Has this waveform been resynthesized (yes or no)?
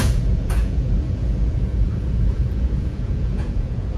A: yes